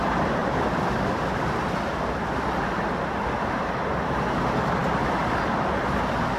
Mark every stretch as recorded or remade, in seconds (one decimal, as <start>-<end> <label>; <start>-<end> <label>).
0.0-0.4 recorded; 0.4-1.3 remade; 1.3-6.4 recorded